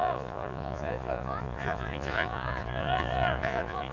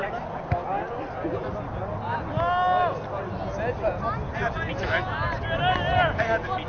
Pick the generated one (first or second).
first